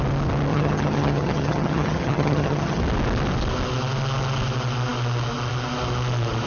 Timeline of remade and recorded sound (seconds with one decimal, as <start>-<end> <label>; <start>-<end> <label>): 0.0-0.5 recorded; 0.5-2.8 remade; 2.8-6.5 recorded